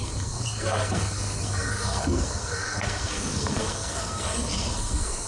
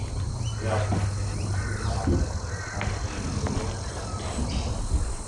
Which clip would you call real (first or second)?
second